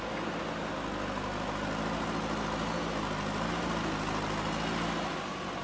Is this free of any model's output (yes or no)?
yes